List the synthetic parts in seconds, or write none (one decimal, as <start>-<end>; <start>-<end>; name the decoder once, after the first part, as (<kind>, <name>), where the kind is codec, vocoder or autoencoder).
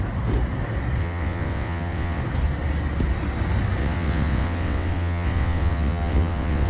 1.0-2.2 (vocoder, WaveNeXt); 3.8-6.7